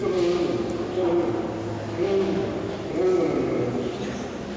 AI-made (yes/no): no